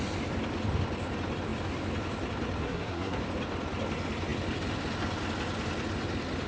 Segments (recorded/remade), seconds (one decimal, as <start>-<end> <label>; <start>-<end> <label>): 0.0-2.6 recorded; 2.6-3.2 remade; 3.2-6.5 recorded